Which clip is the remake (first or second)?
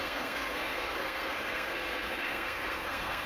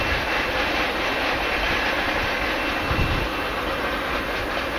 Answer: first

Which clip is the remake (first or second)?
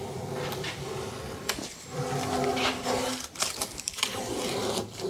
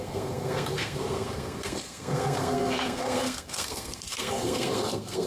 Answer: second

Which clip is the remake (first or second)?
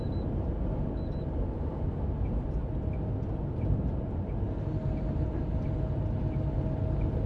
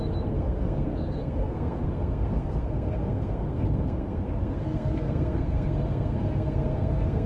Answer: second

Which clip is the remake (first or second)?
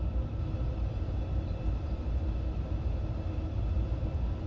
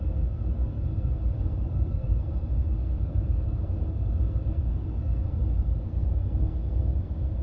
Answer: second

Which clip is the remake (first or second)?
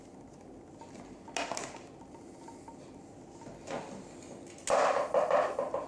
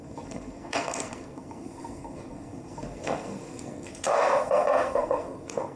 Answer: second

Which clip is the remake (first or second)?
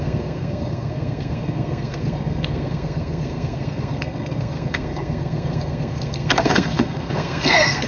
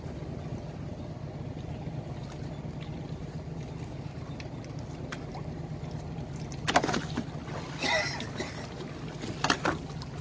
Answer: first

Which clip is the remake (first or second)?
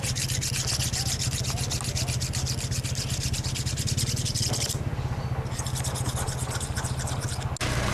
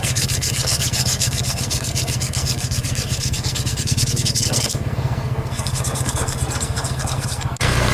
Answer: second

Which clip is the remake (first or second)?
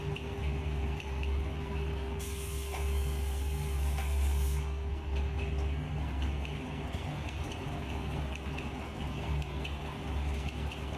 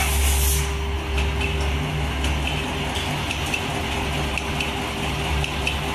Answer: first